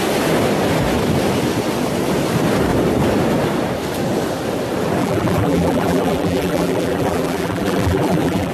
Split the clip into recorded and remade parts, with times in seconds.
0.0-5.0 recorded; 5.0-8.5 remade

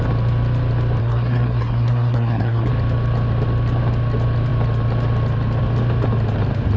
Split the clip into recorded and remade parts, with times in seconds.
0.0-1.0 recorded; 1.0-2.7 remade; 2.7-6.8 recorded

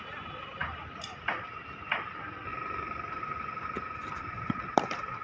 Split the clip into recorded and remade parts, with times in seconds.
0.0-5.2 remade

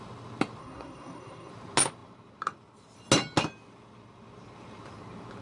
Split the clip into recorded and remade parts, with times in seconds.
0.0-0.6 recorded; 0.6-1.5 remade; 1.5-5.4 recorded

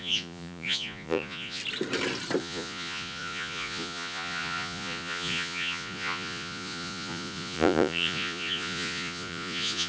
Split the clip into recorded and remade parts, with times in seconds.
0.0-1.6 remade; 1.6-2.4 recorded; 2.4-9.9 remade